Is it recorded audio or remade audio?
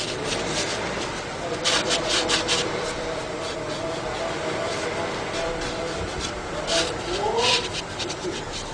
remade